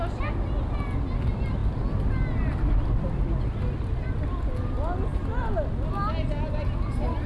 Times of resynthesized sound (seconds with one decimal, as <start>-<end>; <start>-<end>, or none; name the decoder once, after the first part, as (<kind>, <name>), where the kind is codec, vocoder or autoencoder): none